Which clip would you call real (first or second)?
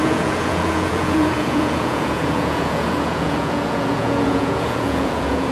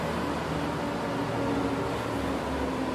second